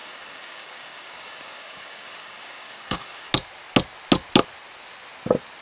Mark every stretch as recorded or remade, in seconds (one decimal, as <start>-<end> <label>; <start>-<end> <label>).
0.0-3.3 remade; 3.3-5.6 recorded